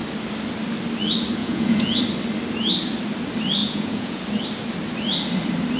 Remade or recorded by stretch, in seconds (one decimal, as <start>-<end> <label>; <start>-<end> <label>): 0.0-1.4 recorded; 1.4-2.0 remade; 2.0-3.6 recorded; 3.6-4.2 remade; 4.2-5.8 recorded